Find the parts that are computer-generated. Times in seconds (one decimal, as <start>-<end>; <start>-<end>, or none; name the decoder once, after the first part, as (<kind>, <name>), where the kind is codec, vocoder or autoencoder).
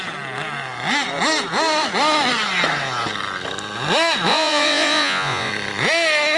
4.3-5.5 (vocoder, Vocos)